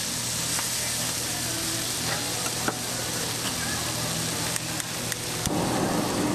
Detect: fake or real real